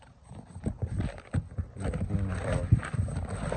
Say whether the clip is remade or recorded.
recorded